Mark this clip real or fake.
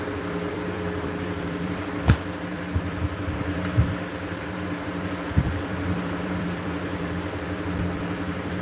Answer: fake